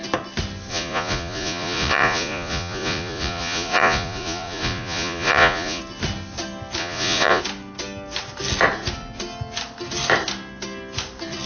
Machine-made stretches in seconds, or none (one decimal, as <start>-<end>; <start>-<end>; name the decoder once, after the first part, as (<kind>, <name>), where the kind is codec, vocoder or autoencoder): 0.7-5.8 (vocoder, Vocos); 6.8-7.4